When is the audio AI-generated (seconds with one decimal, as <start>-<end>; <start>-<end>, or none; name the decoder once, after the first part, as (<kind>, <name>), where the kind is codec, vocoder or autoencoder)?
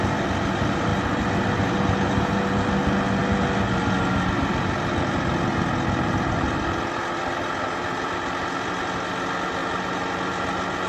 none